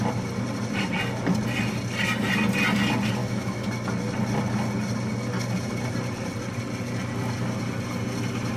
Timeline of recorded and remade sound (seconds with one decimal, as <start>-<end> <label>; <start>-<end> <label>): 0.0-3.2 recorded; 3.2-3.7 remade; 3.7-8.6 recorded